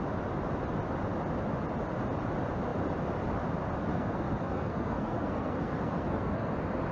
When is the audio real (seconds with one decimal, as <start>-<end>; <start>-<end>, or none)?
0.0-3.9; 6.5-6.9